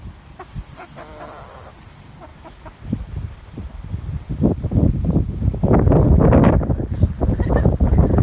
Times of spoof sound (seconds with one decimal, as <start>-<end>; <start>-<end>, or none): none